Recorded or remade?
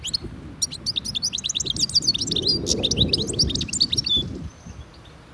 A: recorded